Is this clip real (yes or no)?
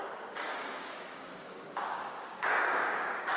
no